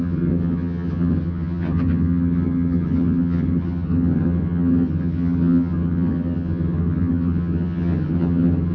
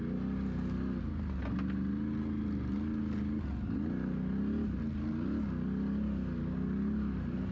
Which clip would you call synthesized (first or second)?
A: first